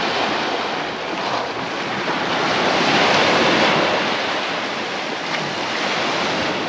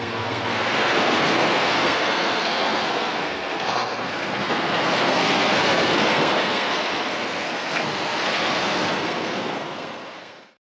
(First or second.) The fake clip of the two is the second